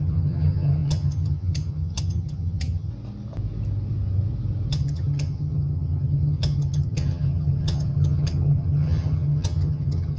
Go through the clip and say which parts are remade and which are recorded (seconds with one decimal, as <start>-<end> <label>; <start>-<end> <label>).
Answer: 0.0-2.9 remade; 2.9-4.7 recorded; 4.7-10.2 remade